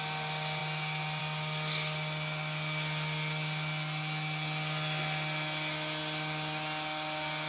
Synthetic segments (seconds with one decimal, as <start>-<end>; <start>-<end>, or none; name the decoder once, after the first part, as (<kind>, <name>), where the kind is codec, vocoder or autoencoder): none